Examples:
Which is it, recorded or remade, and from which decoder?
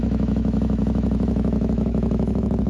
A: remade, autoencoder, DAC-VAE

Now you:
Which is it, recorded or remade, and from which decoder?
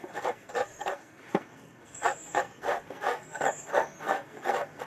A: remade, codec, SNAC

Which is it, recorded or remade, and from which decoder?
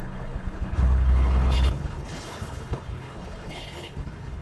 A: remade, codec, HILCodec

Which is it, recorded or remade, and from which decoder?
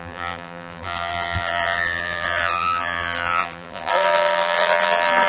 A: remade, vocoder, BigVGAN v2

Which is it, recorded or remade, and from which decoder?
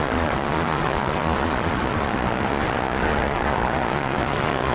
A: remade, vocoder, Vocos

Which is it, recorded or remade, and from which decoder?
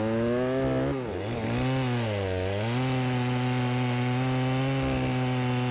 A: recorded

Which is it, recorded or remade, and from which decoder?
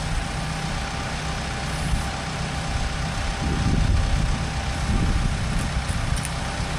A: recorded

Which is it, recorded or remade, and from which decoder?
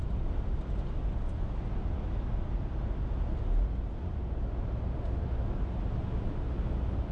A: recorded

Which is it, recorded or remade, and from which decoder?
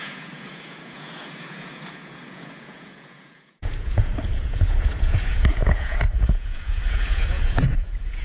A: remade, vocoder, Vocos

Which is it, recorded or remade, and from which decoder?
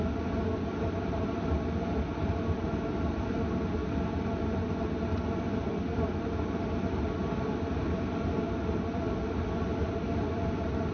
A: recorded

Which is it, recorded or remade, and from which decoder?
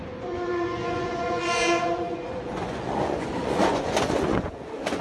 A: remade, vocoder, Vocos